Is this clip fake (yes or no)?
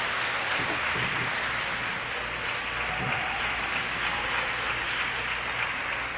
no